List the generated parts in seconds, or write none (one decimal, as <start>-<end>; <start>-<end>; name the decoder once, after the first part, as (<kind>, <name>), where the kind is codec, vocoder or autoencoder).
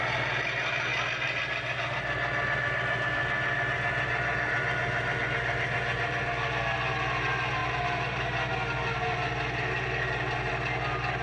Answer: none